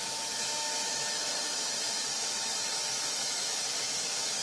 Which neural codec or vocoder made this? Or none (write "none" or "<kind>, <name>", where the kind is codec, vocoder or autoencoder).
autoencoder, DAC-VAE